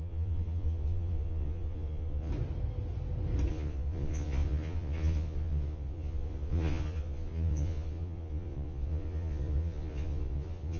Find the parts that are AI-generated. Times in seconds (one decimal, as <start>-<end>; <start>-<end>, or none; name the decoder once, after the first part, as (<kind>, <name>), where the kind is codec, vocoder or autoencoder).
0.0-2.3 (vocoder, Vocos); 3.5-10.8